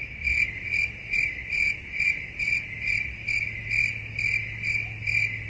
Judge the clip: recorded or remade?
recorded